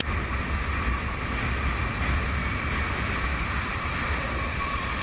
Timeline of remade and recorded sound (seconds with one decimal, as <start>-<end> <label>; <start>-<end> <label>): 0.0-5.0 recorded